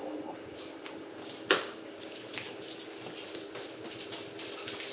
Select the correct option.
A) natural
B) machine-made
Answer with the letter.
A